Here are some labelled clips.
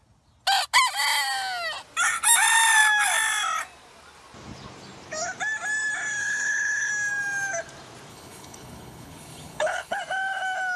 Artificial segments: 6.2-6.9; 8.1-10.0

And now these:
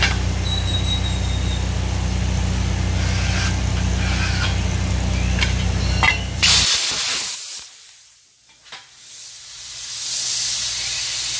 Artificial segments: none

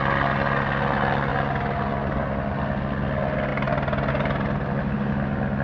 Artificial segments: none

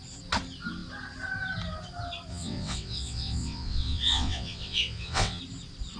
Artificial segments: 2.3-5.4

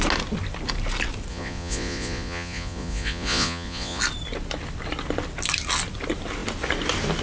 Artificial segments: 1.3-4.0